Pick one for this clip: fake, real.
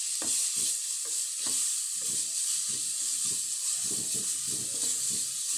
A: real